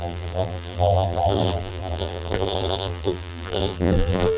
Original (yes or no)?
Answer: no